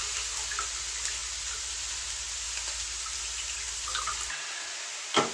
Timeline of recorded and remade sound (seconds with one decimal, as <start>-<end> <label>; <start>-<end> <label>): 0.0-5.3 recorded